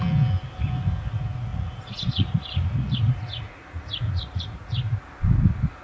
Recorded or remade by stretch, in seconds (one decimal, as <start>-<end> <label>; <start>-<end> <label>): 0.0-1.5 recorded; 1.5-5.0 remade; 5.0-5.8 recorded

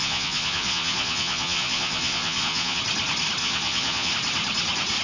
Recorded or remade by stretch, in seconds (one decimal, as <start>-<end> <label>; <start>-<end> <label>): 0.0-2.8 remade; 2.8-3.4 recorded; 3.4-4.1 remade; 4.1-5.0 recorded

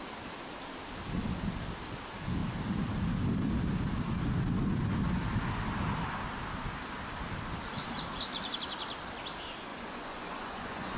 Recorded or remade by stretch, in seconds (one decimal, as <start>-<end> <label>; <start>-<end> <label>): 0.0-9.7 recorded; 9.7-11.0 remade